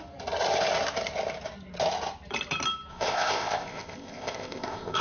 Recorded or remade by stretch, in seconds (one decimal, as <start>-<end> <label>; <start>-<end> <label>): 0.0-2.9 recorded; 2.9-5.0 remade